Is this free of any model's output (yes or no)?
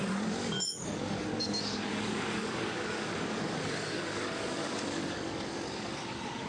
no